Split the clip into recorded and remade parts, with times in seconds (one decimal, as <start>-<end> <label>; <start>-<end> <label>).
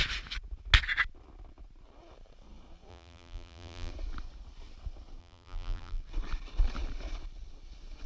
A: 0.0-2.9 recorded; 2.9-3.9 remade; 3.9-5.2 recorded; 5.2-6.0 remade; 6.0-8.1 recorded